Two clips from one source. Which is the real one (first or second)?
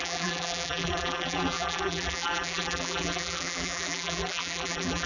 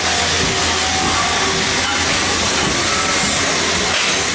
second